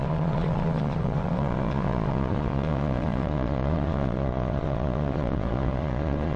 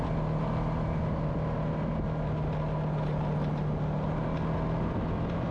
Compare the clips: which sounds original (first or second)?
second